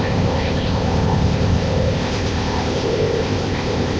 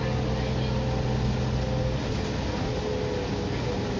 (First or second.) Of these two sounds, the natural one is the second